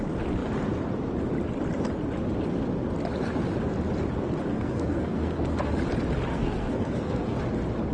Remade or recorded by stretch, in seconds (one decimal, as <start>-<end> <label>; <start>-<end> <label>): 0.0-4.5 recorded; 4.5-5.7 remade; 5.7-6.3 recorded; 6.3-7.4 remade; 7.4-7.9 recorded